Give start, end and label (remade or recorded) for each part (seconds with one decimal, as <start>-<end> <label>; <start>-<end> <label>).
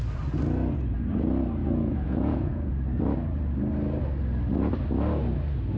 0.0-1.6 recorded; 1.6-2.7 remade; 2.7-5.8 recorded